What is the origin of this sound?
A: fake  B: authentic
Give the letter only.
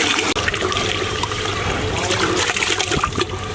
B